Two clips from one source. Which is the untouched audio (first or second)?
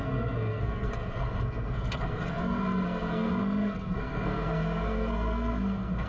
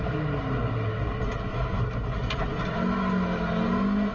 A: second